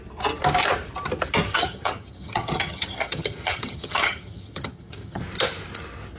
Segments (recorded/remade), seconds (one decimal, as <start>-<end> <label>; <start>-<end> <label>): 0.0-1.5 recorded; 1.5-5.2 remade; 5.2-6.2 recorded